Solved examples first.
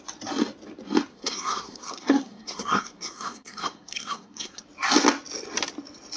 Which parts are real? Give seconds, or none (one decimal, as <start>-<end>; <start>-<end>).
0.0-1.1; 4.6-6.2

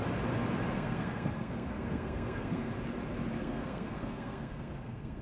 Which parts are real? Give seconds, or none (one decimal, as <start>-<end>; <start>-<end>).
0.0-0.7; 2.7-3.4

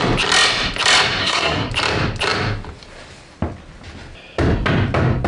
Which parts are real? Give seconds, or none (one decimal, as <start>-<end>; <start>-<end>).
0.0-1.2; 1.7-5.3

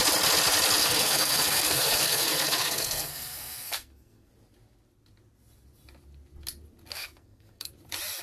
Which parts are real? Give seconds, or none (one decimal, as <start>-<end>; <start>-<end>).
0.0-0.8; 4.3-6.9; 7.7-8.2

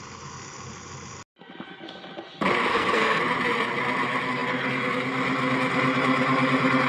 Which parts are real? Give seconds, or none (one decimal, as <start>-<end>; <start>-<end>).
0.0-2.7; 3.2-6.9

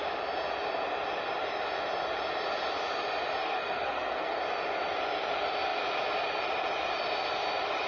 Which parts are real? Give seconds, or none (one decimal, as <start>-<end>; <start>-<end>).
0.0-3.4; 4.4-7.9

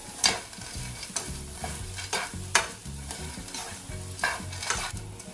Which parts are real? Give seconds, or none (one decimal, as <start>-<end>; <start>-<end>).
0.0-5.3